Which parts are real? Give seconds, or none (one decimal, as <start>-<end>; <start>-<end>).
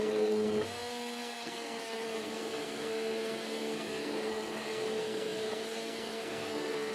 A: none